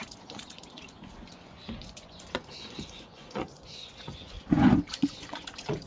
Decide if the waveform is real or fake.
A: fake